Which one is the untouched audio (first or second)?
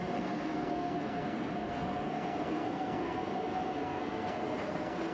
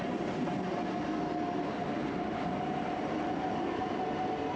second